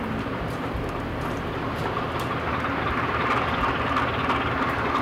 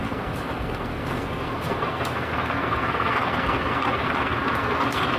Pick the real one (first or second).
first